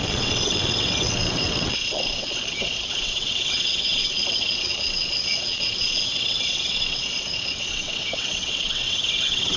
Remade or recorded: remade